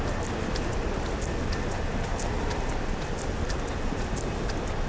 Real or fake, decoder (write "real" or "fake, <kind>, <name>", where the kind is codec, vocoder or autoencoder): real